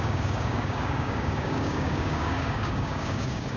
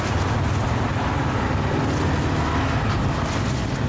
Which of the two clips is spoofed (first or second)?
first